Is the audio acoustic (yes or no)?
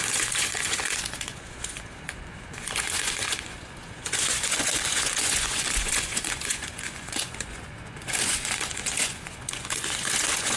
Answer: no